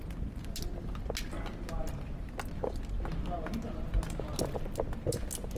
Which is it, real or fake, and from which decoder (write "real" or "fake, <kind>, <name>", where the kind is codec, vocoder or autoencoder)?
real